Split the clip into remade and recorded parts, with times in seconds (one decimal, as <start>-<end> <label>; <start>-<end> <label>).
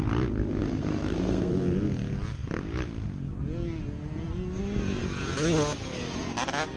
0.0-0.6 recorded; 0.6-1.5 remade; 1.5-6.8 recorded